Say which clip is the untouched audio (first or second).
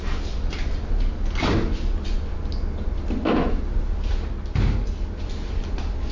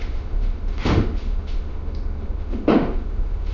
first